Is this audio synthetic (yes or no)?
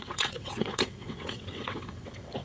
yes